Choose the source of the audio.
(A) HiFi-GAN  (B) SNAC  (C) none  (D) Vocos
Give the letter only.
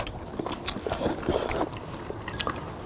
C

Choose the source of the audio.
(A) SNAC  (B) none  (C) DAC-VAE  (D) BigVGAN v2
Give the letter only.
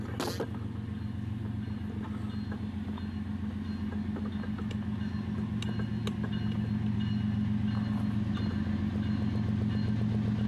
B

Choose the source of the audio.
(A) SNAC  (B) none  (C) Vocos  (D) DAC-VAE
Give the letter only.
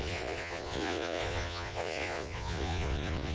C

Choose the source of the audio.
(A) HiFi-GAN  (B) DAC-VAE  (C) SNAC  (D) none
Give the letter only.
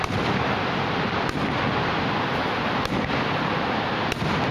D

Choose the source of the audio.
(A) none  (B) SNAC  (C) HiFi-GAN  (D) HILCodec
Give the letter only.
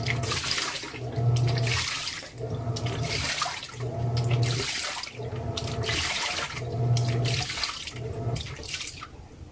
A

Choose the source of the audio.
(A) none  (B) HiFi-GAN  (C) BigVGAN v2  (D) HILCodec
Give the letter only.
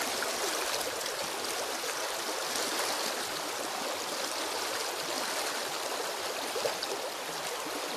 A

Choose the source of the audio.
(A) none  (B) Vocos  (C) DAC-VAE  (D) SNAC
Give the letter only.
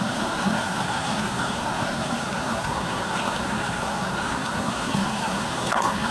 D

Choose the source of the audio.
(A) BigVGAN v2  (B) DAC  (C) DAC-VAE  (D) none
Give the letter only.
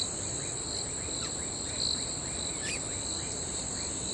A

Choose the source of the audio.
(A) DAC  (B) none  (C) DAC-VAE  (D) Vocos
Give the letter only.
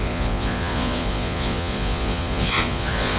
D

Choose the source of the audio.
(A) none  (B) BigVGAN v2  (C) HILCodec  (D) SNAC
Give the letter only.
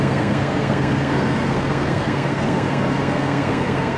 D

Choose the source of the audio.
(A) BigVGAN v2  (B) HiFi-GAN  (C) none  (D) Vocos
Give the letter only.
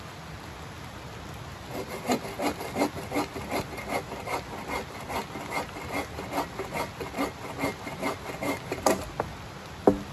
C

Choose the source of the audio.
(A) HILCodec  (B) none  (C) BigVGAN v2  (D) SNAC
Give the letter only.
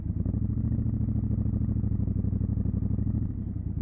B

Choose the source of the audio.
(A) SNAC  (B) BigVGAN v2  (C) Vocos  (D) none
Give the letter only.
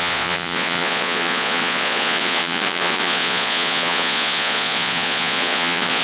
C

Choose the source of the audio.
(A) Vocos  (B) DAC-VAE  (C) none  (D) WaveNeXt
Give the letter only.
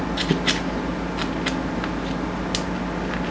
C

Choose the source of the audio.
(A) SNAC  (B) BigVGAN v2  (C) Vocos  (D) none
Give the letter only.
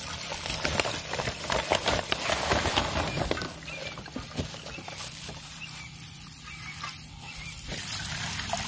B